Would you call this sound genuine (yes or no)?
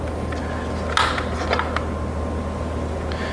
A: yes